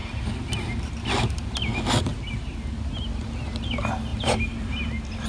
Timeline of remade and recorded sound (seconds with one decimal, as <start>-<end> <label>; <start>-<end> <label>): 0.0-4.1 recorded; 4.1-4.7 remade; 4.7-5.3 recorded